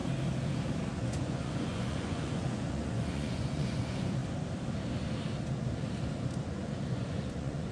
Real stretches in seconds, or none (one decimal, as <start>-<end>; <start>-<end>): 0.0-1.0; 4.2-6.2